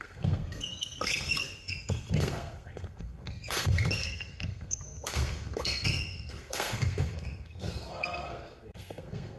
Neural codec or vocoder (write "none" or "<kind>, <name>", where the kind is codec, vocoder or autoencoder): codec, SNAC